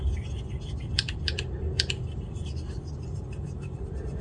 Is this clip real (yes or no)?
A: no